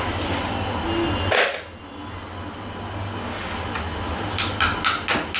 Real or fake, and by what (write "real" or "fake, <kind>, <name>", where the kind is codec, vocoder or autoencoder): real